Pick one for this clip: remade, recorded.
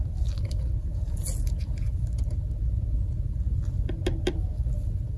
recorded